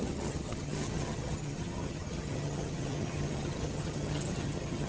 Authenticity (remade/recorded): remade